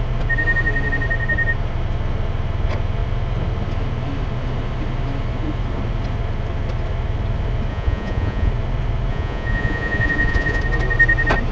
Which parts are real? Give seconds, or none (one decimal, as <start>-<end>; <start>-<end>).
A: 0.0-7.7; 8.5-9.1; 10.6-11.5